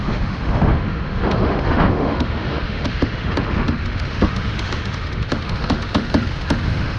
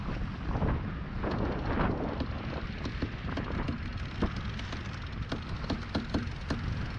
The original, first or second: second